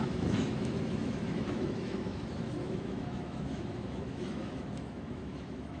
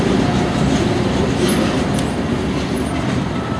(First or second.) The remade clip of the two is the first